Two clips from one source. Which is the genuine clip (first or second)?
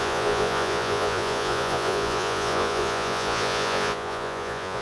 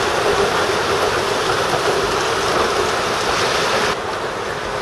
second